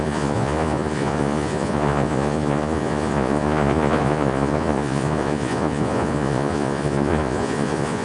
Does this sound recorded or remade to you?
remade